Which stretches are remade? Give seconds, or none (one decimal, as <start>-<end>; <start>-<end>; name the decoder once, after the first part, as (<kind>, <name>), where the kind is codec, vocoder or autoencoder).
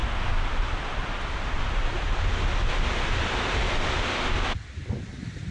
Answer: none